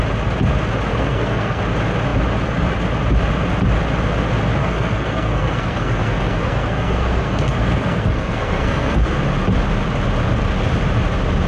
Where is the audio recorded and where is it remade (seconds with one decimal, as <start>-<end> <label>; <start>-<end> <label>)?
0.0-0.9 recorded; 0.9-1.6 remade; 1.6-4.6 recorded; 4.6-9.2 remade; 9.2-11.5 recorded